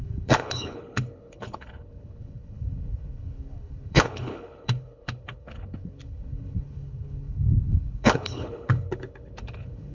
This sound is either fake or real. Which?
fake